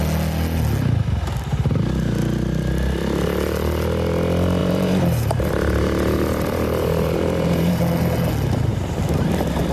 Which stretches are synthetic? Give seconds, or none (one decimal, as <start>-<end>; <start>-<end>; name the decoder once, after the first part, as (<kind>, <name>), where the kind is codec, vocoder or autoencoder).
4.6-7.8 (vocoder, BigVGAN v2); 8.7-9.2